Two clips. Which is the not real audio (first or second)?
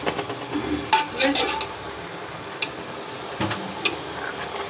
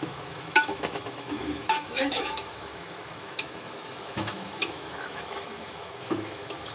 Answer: second